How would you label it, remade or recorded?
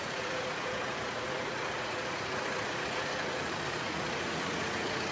remade